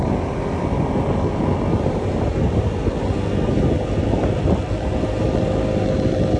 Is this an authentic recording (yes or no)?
yes